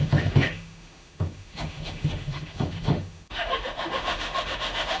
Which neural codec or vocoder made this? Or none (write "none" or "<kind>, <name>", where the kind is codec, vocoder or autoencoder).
autoencoder, DAC-VAE